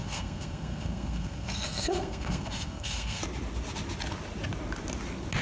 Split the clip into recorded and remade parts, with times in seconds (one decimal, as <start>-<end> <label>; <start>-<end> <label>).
0.0-3.2 remade; 3.2-5.4 recorded